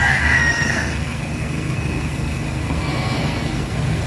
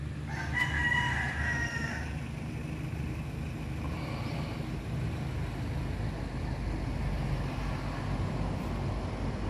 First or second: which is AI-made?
first